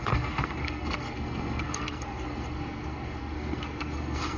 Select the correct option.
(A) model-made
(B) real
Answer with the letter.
A